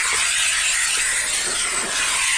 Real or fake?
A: real